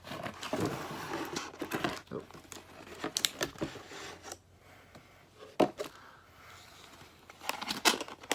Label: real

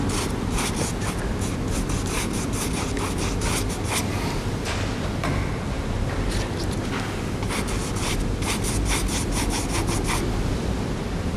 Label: real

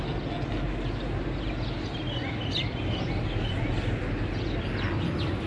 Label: real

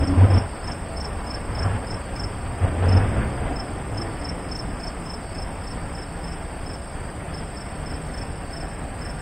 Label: real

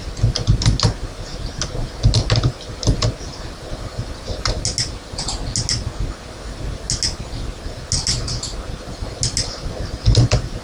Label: real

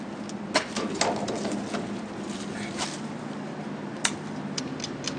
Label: real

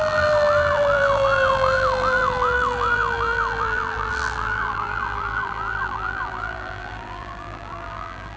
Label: fake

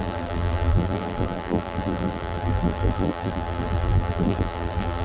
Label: fake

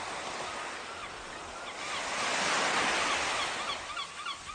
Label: real